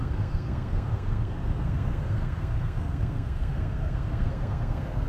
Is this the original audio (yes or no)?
no